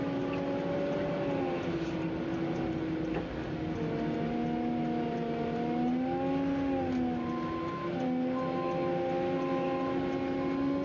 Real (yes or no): yes